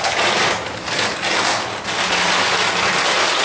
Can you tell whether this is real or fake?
real